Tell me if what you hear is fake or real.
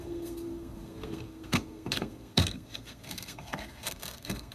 fake